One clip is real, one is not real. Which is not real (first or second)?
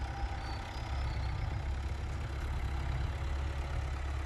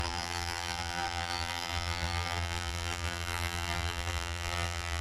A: second